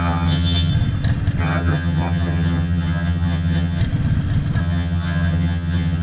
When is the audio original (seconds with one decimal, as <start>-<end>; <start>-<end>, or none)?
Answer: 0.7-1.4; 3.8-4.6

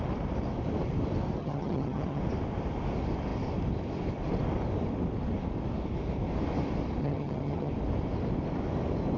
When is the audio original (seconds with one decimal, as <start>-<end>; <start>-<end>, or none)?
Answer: 0.0-1.4; 2.2-7.0; 7.7-9.2

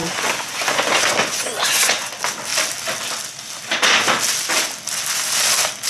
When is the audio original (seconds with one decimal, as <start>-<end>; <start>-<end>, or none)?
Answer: 2.1-5.9

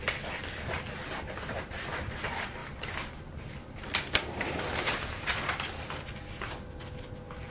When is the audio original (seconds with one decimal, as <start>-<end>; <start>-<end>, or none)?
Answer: 0.0-7.5